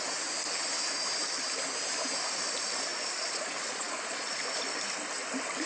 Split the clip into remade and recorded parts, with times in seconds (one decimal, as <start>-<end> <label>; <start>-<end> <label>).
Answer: 0.0-2.9 recorded; 2.9-4.6 remade; 4.6-5.7 recorded